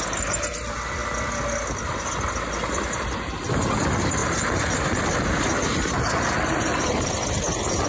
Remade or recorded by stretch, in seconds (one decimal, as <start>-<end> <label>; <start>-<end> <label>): 0.0-7.9 recorded